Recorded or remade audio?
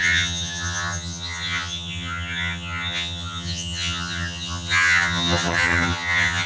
remade